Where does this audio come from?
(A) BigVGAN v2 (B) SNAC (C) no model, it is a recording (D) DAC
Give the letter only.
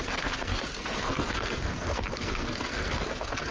B